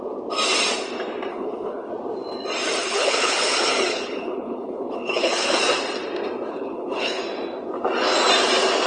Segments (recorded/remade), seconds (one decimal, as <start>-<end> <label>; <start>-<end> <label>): 0.0-1.3 recorded; 1.3-1.9 remade; 1.9-2.8 recorded; 2.8-5.6 remade; 5.6-6.5 recorded; 6.5-7.2 remade; 7.2-8.9 recorded